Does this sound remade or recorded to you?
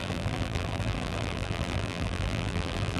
remade